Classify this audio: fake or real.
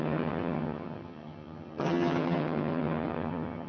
fake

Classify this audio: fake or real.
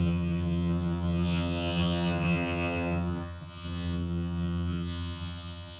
fake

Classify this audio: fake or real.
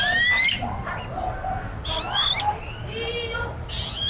real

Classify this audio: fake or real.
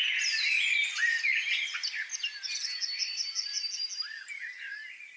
real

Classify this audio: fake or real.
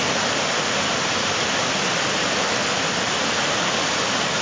real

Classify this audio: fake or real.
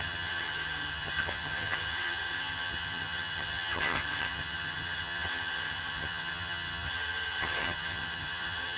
fake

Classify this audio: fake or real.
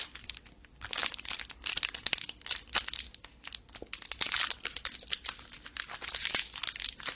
real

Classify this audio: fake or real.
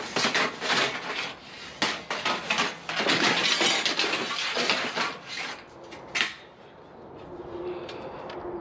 real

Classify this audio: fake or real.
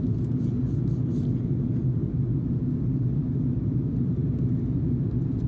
real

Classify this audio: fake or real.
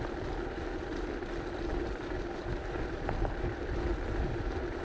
real